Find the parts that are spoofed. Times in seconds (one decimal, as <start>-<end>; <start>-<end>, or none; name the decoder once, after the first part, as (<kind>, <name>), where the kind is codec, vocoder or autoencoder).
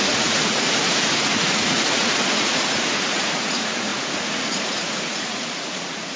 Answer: 0.0-6.2 (vocoder, Vocos)